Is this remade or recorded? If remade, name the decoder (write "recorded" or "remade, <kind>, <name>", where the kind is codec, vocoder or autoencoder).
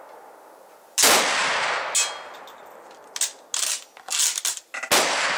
recorded